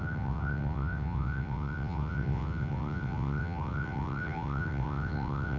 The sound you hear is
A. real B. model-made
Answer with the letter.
B